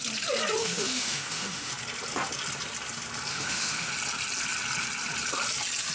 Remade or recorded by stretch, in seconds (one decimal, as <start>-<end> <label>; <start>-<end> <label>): 0.0-0.6 recorded; 0.6-1.7 remade; 1.7-3.3 recorded; 3.3-3.9 remade; 3.9-5.9 recorded